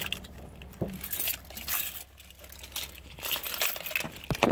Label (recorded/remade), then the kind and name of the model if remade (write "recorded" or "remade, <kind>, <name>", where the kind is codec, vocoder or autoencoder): recorded